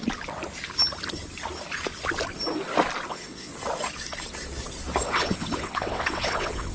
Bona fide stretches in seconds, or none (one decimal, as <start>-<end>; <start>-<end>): 0.0-3.1; 3.5-5.0